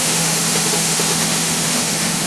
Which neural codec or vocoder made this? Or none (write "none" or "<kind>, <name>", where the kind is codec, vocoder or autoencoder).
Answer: autoencoder, DAC-VAE